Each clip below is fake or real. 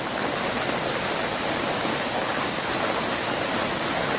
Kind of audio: real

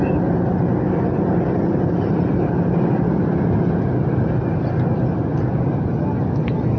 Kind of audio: real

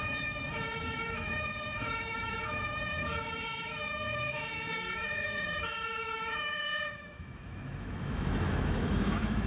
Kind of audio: fake